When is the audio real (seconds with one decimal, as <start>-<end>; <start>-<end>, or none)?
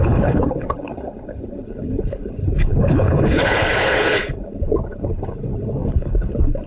none